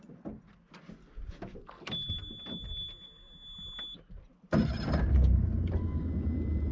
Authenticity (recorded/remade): recorded